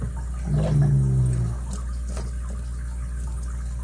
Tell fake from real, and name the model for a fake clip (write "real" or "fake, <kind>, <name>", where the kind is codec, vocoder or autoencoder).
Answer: real